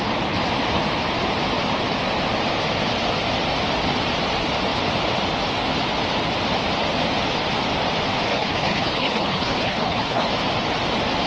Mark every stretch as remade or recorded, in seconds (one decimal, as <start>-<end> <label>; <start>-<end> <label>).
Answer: 0.0-8.3 recorded; 8.3-10.3 remade; 10.3-11.3 recorded